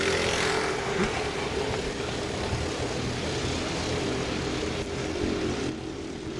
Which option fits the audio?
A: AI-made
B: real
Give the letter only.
B